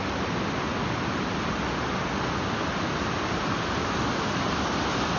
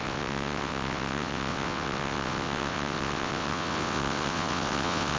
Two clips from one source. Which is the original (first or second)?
first